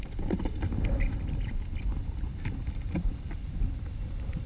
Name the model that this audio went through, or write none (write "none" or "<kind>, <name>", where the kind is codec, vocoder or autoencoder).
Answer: none